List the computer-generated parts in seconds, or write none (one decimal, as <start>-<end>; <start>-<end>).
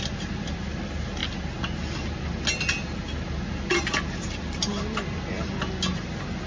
none